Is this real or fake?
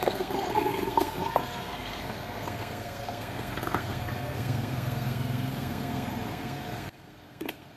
fake